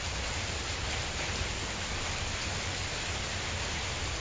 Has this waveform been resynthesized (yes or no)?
no